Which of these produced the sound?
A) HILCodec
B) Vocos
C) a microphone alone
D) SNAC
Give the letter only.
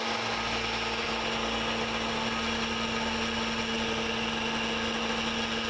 C